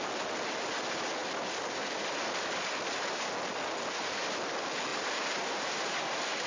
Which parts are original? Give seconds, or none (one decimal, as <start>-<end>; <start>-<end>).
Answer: 0.0-6.5